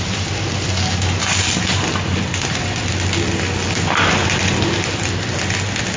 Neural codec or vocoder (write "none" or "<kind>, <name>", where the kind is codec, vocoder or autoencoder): none